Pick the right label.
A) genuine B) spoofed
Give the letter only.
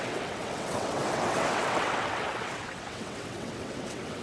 B